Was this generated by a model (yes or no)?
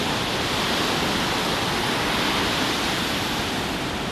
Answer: no